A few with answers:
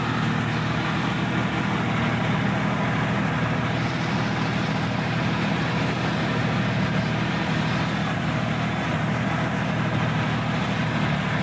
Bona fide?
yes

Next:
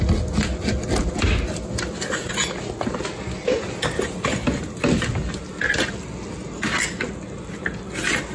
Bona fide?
yes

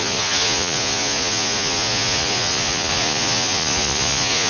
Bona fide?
no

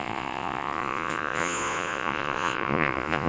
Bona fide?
no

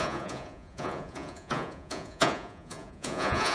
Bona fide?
no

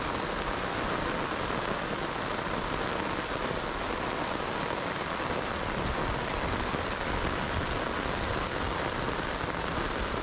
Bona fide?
yes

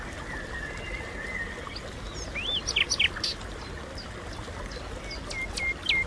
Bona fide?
yes